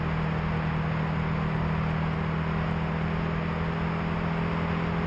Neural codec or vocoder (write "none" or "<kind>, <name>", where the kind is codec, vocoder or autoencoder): none